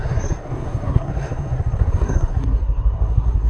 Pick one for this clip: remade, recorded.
remade